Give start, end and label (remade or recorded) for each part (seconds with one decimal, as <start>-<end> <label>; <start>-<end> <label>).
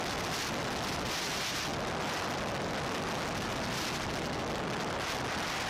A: 0.0-5.7 recorded